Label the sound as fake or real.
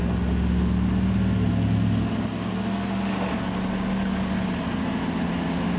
real